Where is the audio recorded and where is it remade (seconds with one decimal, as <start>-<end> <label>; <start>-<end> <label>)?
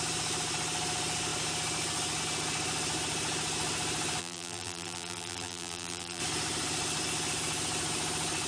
0.0-4.2 recorded; 4.2-6.2 remade; 6.2-8.5 recorded